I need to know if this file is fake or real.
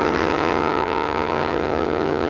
fake